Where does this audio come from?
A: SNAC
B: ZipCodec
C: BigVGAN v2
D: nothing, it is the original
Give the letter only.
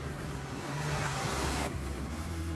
A